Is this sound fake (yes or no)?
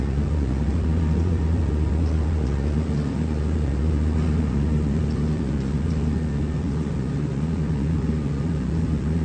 yes